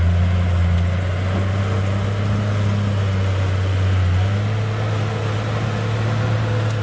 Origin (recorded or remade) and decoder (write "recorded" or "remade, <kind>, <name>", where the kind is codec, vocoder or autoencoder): recorded